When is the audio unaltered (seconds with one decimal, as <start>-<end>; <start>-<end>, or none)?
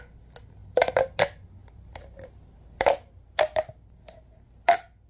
0.0-1.6; 3.4-5.1